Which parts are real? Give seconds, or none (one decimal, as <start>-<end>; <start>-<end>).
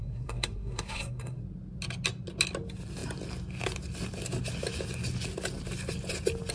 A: 1.4-6.5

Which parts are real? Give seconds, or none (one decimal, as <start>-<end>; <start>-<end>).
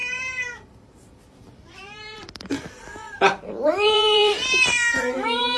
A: none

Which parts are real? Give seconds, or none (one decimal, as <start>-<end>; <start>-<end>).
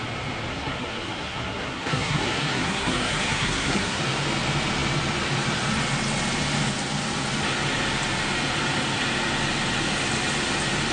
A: 0.0-0.5; 4.0-10.9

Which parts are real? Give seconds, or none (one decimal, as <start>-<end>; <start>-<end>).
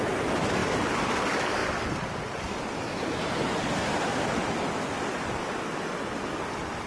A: 0.0-6.9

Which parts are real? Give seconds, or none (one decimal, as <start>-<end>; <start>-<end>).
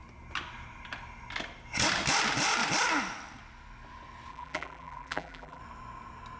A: 0.0-4.3; 5.6-6.4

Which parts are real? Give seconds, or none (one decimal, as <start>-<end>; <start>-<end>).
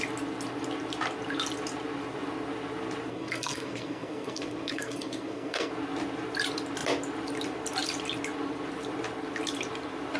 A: 0.0-3.1; 5.7-10.2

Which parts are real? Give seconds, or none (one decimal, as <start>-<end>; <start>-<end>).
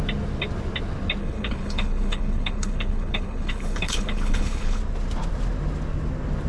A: 0.0-1.2; 4.8-6.5